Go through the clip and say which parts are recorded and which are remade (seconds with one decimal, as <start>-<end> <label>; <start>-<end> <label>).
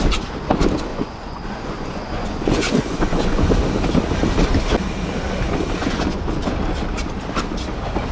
0.0-0.9 recorded; 0.9-3.5 remade; 3.5-5.8 recorded; 5.8-6.4 remade; 6.4-8.1 recorded